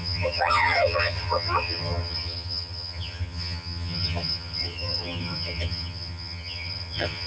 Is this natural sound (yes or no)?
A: no